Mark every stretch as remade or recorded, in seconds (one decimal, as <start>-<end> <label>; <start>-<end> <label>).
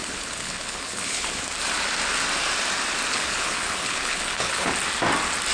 0.0-1.4 remade; 1.4-3.1 recorded; 3.1-4.7 remade; 4.7-5.5 recorded